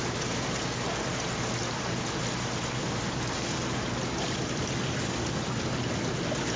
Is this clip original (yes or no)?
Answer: yes